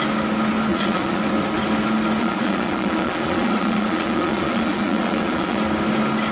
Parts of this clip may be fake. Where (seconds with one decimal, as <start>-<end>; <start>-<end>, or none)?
0.7-1.2; 2.2-5.6